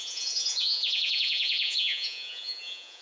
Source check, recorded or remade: remade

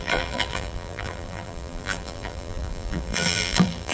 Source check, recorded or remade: remade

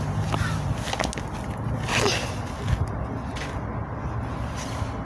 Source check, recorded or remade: recorded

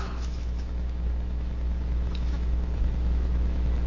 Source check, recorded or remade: remade